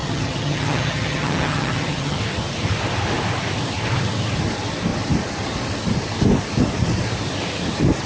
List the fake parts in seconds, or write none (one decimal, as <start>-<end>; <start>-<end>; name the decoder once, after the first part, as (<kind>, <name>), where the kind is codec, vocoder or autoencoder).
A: 0.0-2.2 (vocoder, HiFi-GAN)